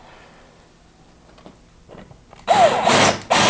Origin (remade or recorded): recorded